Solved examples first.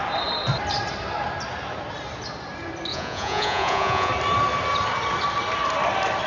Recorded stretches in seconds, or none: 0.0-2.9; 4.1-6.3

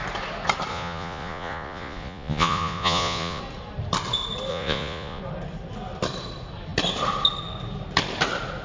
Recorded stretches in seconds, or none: 0.0-0.7; 3.4-4.5; 5.2-8.6

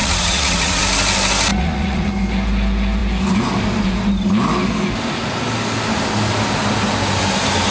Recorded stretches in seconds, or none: 0.8-1.5; 2.1-7.7